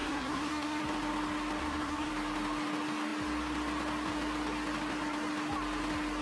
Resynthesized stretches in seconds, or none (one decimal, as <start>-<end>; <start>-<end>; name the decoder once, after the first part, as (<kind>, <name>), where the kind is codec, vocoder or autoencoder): 0.0-0.8 (codec, SNAC); 1.6-2.1